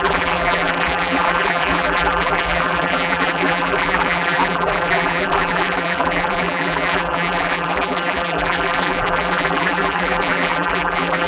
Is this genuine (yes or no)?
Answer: no